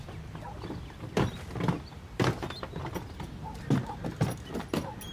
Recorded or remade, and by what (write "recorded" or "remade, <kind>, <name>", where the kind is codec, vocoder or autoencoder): recorded